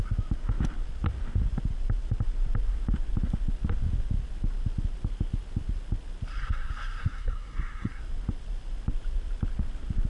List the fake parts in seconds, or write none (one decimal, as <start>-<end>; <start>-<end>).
6.3-8.0